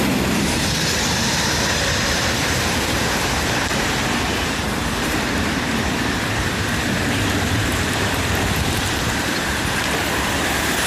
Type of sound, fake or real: fake